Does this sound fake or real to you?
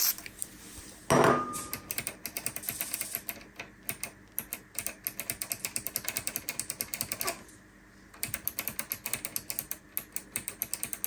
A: real